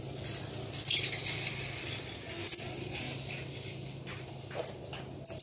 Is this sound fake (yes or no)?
no